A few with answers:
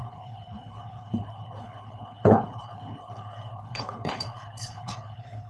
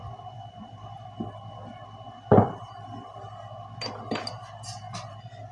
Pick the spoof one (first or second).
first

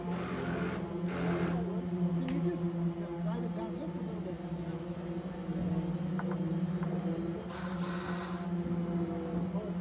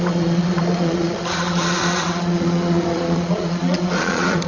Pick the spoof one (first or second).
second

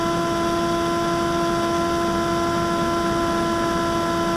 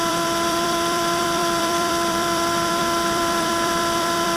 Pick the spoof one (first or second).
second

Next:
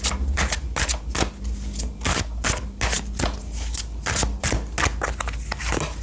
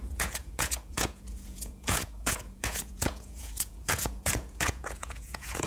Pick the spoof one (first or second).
second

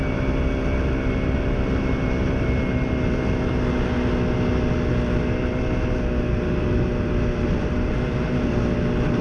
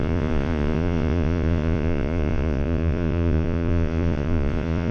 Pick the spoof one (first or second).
second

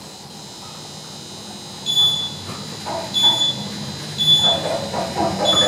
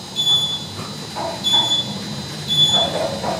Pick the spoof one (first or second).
second